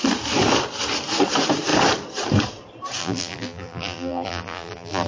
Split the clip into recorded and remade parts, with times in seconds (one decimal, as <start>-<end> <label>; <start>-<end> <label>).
0.0-3.0 recorded; 3.0-5.1 remade